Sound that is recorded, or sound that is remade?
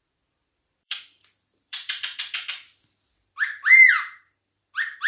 remade